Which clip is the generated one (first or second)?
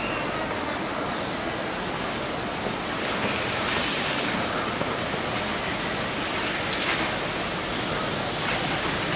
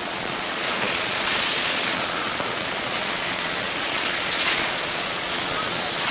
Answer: second